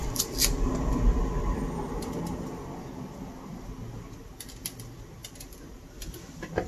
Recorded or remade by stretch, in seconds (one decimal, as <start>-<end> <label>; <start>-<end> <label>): 0.0-2.2 remade; 2.2-6.7 recorded